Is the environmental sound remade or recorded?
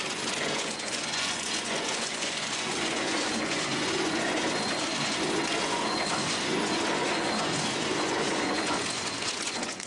remade